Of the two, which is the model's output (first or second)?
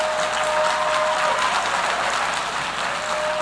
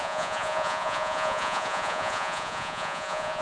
second